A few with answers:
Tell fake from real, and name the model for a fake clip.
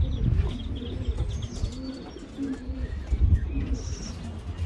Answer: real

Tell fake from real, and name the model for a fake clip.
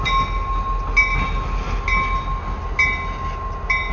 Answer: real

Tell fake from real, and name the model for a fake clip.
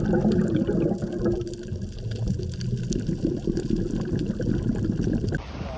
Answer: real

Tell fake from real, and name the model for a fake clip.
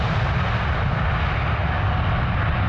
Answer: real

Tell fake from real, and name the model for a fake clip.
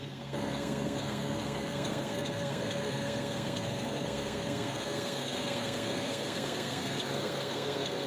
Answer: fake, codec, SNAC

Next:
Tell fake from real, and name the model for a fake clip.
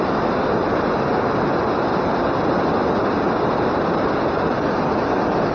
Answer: real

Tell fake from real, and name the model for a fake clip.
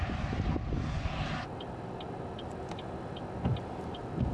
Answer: real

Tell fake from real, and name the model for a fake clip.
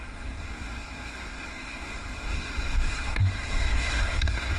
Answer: fake, codec, SNAC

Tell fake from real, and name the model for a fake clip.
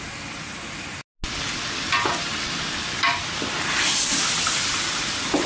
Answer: real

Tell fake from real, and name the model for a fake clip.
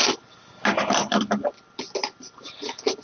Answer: real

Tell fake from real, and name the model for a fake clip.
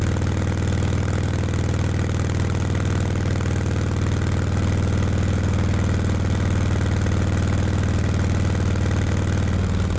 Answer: real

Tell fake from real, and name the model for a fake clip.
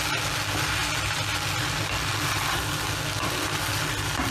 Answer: real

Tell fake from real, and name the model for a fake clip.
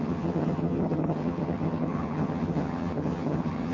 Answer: fake, vocoder, HiFi-GAN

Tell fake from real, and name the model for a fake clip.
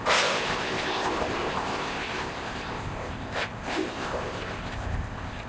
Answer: fake, codec, ZipCodec